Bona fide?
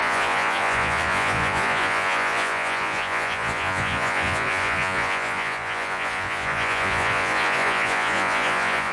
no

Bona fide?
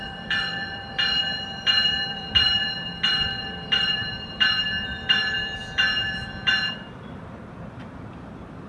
no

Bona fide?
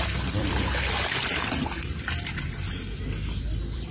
no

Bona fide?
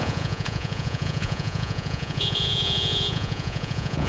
no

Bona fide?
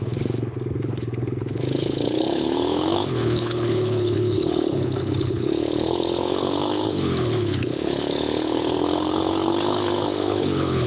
no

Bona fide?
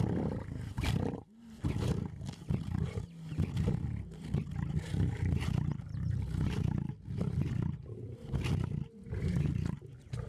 yes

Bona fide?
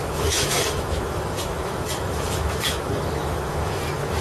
no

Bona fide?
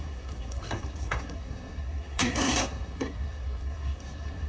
no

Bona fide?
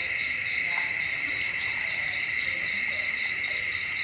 yes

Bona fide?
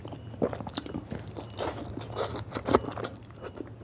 yes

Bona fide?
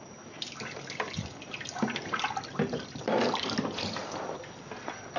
yes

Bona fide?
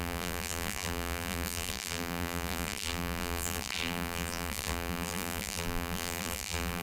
no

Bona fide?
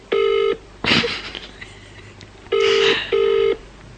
yes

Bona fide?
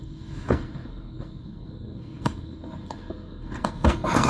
no